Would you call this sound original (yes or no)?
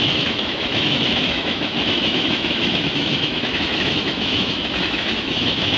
no